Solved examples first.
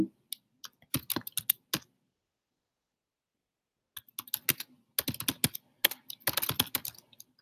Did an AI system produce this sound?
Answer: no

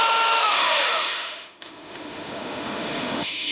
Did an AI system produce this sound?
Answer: yes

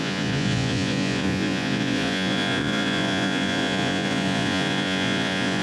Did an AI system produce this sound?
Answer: yes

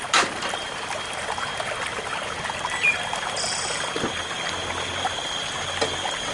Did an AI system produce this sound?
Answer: no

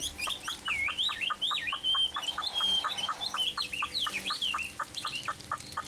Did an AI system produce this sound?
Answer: no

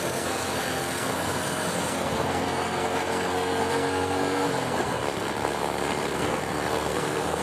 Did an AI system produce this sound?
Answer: yes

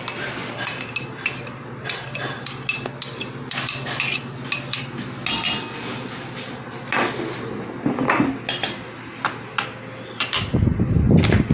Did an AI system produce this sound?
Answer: no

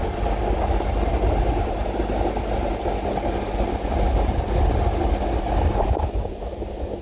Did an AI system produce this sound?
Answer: no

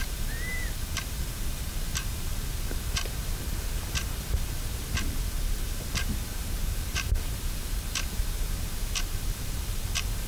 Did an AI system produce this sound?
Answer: yes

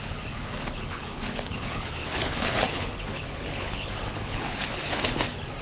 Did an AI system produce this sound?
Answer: yes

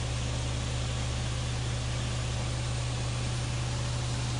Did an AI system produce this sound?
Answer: no